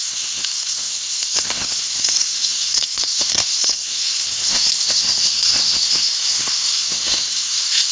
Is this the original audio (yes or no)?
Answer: no